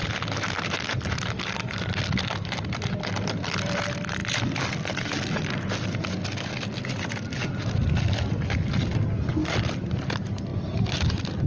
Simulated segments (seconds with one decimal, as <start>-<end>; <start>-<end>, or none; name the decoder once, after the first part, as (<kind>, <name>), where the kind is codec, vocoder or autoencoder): none